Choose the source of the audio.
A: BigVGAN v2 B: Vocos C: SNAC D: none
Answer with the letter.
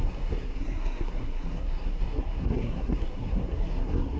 C